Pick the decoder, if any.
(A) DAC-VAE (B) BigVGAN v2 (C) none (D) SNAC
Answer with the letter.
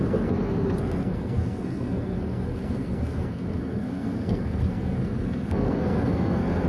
D